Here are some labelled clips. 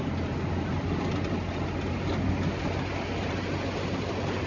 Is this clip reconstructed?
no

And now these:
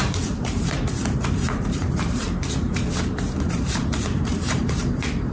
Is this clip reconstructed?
yes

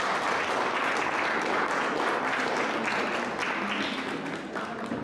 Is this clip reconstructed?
no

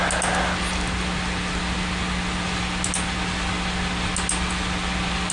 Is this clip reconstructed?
no